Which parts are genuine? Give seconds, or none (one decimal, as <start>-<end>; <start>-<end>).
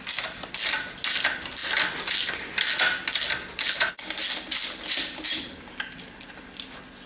0.0-7.1